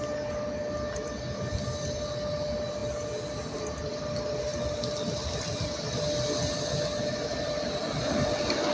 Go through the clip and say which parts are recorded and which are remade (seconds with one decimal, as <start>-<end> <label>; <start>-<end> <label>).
0.0-8.7 recorded